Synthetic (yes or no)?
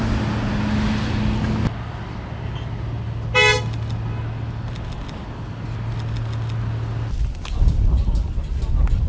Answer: no